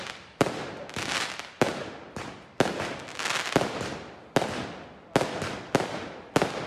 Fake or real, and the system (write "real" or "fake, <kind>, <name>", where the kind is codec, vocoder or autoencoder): real